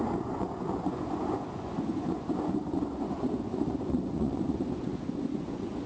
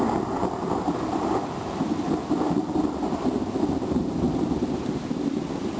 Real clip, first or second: second